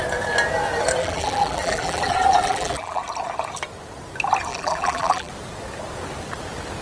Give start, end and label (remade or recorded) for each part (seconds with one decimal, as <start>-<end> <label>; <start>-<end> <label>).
0.0-1.0 recorded; 1.0-3.0 remade; 3.0-4.5 recorded; 4.5-5.3 remade; 5.3-6.8 recorded